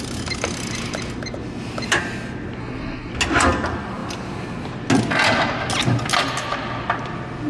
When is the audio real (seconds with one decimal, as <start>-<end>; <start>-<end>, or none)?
0.0-2.6; 3.1-7.5